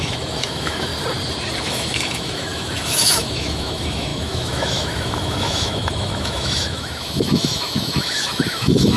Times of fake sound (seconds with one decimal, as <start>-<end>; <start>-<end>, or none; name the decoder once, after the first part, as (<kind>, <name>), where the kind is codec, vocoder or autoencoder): 0.0-0.9 (autoencoder, DAC-VAE); 1.6-9.0